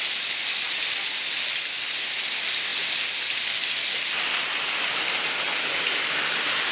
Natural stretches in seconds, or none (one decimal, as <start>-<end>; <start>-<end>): 0.0-6.7